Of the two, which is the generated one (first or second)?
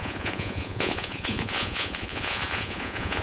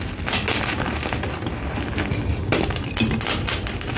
first